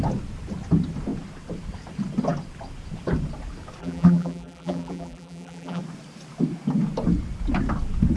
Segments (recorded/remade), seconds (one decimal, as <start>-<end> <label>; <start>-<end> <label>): 0.0-3.8 recorded; 3.8-5.8 remade; 5.8-8.2 recorded